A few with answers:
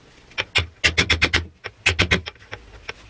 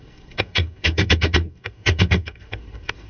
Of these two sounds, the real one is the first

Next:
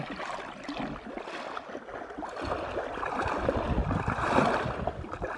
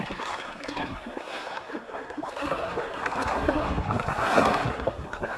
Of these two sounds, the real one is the first